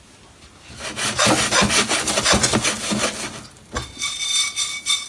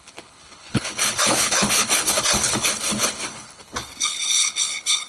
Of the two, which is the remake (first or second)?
second